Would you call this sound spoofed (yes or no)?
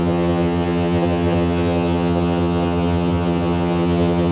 yes